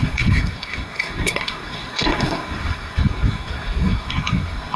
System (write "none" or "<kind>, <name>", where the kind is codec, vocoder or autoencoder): codec, SNAC